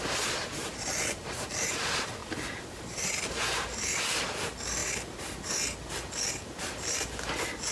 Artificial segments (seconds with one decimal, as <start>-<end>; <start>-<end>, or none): none